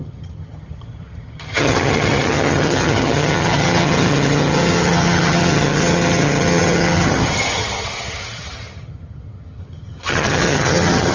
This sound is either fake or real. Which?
fake